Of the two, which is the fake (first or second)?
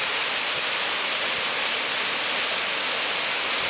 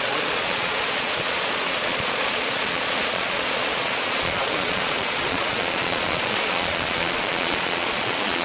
second